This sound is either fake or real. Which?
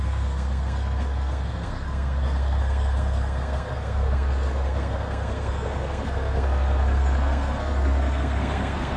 fake